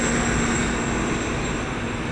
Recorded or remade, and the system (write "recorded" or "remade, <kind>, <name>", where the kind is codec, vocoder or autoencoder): recorded